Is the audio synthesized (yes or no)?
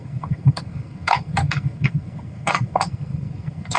yes